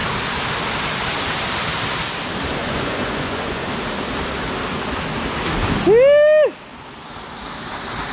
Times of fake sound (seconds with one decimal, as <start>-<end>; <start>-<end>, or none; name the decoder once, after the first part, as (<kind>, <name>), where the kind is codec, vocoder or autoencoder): 2.6-3.7 (vocoder, Vocos)